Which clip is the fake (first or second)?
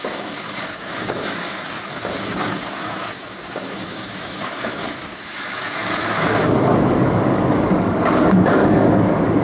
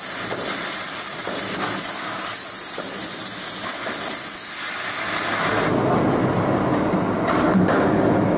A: first